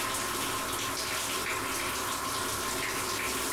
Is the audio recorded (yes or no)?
yes